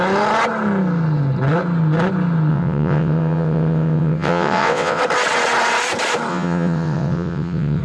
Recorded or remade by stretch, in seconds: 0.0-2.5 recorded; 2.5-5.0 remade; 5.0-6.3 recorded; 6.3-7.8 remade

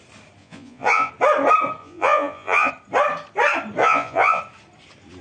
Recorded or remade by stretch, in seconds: 0.0-0.4 recorded; 0.4-1.1 remade; 1.1-1.8 recorded; 1.8-2.7 remade; 2.7-3.8 recorded; 3.8-4.4 remade; 4.4-5.2 recorded